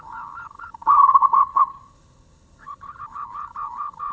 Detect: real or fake fake